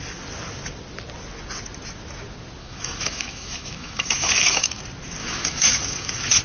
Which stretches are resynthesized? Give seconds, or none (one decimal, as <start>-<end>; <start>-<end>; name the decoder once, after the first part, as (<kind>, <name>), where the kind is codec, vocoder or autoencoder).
2.6-4.8 (autoencoder, DAC-VAE); 5.2-6.4